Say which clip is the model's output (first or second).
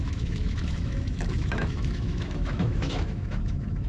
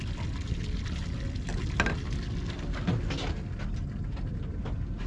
first